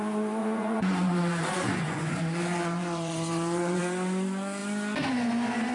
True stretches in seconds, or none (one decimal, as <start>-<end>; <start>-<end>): 0.0-0.4; 3.8-5.7